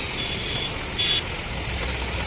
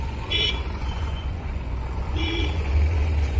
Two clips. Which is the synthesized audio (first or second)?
second